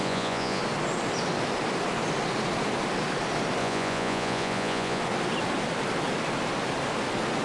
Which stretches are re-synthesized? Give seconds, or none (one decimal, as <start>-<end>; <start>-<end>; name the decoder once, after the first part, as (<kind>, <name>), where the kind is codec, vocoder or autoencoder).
0.0-0.6 (vocoder, Vocos); 3.6-5.0